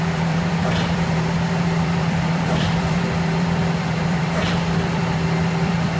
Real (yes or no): no